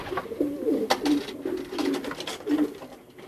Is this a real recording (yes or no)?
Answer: yes